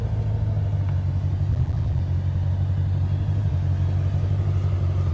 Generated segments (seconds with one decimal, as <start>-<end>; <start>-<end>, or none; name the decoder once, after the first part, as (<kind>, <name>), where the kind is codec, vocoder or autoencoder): 1.5-2.0 (vocoder, BigVGAN v2)